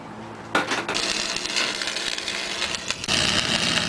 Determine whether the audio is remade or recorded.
recorded